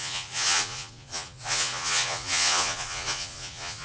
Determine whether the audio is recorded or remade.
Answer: remade